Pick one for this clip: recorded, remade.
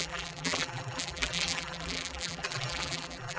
remade